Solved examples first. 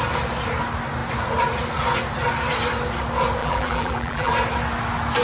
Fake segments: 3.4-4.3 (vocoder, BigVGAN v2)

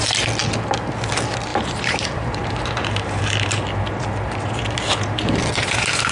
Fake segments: 1.5-3.3 (vocoder, BigVGAN v2)